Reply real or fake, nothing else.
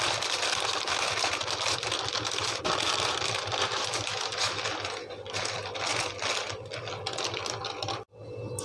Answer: real